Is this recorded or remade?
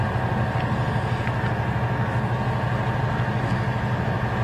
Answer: recorded